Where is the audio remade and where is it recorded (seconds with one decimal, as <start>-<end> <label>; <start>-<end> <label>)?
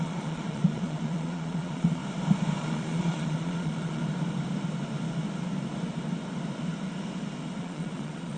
0.0-2.0 remade; 2.0-2.6 recorded; 2.6-4.0 remade; 4.0-7.6 recorded; 7.6-8.4 remade